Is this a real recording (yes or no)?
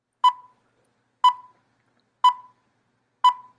yes